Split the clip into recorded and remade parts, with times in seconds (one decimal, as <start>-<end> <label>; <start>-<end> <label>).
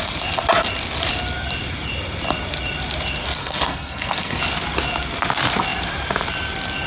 0.0-3.4 recorded; 3.4-4.4 remade; 4.4-6.9 recorded